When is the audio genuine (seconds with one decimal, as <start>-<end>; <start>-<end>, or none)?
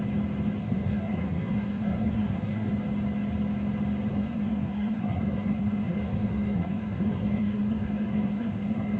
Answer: 0.0-0.6; 2.7-4.1